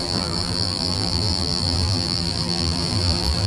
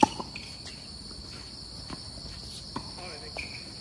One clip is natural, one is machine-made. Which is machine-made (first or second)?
first